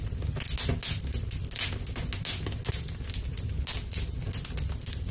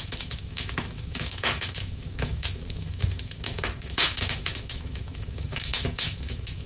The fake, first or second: second